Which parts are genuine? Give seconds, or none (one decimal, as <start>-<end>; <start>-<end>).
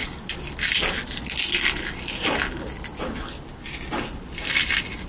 0.0-5.1